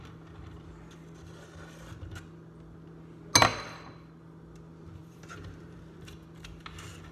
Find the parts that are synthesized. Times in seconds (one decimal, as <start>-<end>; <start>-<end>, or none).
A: 5.0-5.8

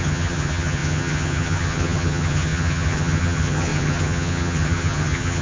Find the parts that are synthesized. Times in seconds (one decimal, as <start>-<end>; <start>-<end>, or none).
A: 0.0-5.4

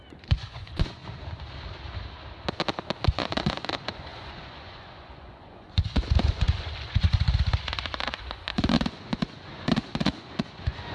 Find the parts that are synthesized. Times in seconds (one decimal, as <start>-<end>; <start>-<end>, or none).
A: 0.0-1.0; 3.1-10.9

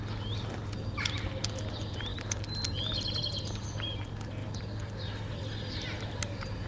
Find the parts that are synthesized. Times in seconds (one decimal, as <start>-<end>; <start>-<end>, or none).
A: none

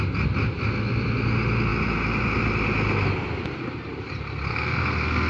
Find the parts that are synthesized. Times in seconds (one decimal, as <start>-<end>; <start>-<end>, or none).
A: 4.5-5.3

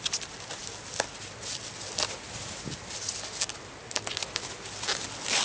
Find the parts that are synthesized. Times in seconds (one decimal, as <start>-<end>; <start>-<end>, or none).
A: none